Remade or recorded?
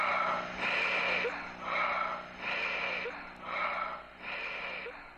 recorded